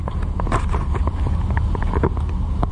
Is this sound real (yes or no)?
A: no